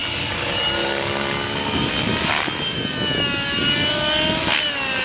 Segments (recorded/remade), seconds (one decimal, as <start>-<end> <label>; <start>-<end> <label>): 0.0-1.9 remade; 1.9-5.0 recorded